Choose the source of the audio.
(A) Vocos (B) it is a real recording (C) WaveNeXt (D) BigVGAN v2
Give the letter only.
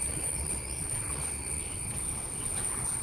C